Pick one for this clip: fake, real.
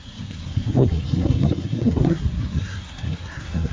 fake